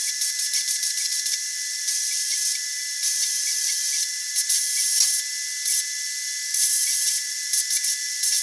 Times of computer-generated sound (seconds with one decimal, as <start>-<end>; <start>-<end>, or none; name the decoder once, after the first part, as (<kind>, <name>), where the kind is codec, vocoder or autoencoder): 0.0-4.6 (vocoder, BigVGAN v2); 6.5-8.4